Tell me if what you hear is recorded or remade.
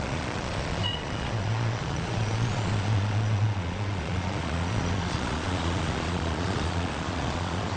remade